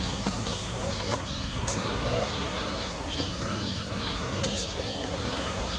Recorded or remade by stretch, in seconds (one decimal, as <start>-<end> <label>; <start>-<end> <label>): 0.0-5.8 remade